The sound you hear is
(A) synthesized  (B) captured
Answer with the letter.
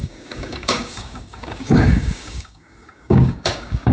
A